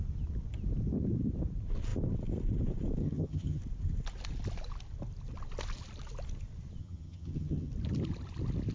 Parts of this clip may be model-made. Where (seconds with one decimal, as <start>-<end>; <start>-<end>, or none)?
3.0-3.6; 6.8-7.7

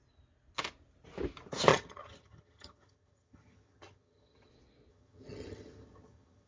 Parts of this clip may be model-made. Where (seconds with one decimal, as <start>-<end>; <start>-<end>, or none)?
1.7-4.5; 4.9-6.5

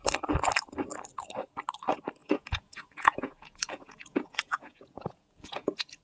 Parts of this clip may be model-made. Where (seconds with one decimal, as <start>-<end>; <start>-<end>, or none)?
2.2-6.0

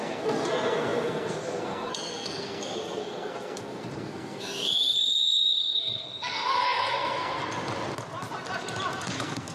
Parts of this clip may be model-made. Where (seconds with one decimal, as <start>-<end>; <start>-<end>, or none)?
0.0-7.4; 9.0-9.5

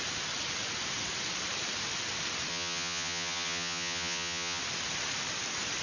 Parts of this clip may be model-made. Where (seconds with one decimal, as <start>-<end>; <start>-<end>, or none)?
2.5-4.6

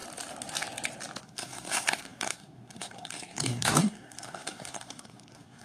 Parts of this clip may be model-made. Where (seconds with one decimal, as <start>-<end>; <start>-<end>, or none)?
1.2-5.6

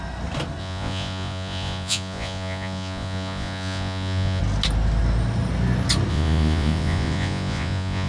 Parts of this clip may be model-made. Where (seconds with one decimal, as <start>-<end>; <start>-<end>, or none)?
0.6-4.4; 6.1-8.1